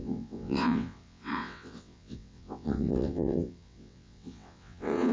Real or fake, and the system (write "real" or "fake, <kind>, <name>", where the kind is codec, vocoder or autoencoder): fake, vocoder, WaveNeXt